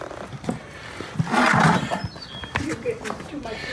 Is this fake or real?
real